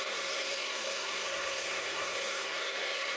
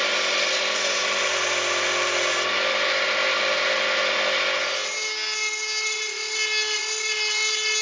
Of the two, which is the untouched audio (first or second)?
second